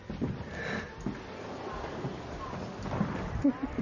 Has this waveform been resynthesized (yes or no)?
no